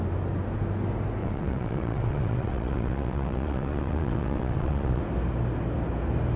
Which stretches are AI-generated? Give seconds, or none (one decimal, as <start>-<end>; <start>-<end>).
1.2-5.0